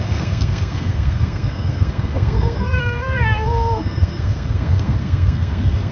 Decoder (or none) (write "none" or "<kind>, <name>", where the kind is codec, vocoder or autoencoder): codec, SNAC